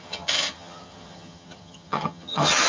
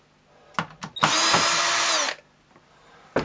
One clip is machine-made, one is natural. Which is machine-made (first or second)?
first